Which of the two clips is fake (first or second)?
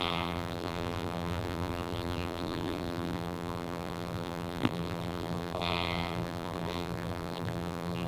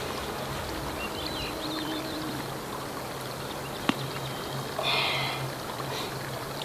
first